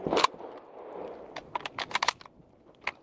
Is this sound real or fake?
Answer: real